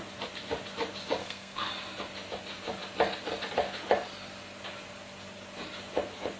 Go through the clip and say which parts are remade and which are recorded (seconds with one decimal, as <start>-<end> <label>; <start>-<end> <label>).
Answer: 0.0-1.2 recorded; 1.2-1.7 remade; 1.7-6.4 recorded